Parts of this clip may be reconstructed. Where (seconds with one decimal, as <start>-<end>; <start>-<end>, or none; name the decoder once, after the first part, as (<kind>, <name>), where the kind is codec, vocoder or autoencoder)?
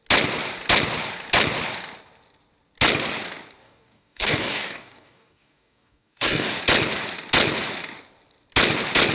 3.6-6.6 (codec, DAC)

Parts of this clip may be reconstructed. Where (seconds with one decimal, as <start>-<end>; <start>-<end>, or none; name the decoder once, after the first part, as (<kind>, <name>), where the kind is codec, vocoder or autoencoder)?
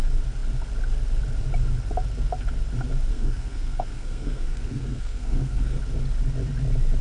3.1-5.8 (codec, SNAC)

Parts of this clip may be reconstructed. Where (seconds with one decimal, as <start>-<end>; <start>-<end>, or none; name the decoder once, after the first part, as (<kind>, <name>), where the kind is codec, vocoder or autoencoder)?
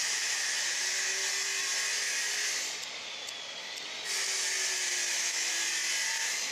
0.0-1.2 (autoencoder, DAC-VAE); 5.1-5.5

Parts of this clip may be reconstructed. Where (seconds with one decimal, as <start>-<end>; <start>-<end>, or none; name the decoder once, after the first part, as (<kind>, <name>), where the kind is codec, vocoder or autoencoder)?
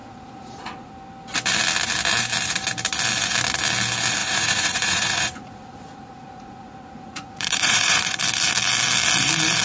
0.0-0.9 (vocoder, Vocos); 4.2-8.2